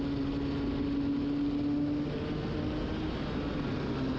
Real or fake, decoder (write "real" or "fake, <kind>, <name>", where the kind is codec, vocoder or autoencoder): real